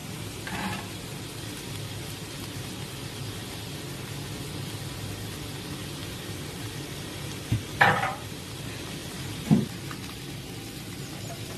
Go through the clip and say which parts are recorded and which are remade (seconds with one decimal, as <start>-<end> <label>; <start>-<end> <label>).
0.0-1.2 remade; 1.2-6.0 recorded; 6.0-8.4 remade; 8.4-9.0 recorded; 9.0-10.2 remade; 10.2-11.6 recorded